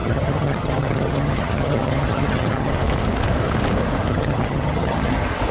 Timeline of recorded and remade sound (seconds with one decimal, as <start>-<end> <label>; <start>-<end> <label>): 0.0-2.7 remade; 2.7-4.1 recorded; 4.1-5.1 remade; 5.1-5.5 recorded